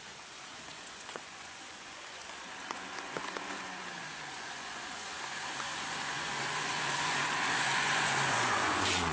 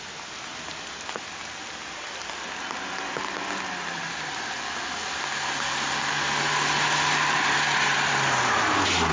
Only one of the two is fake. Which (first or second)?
first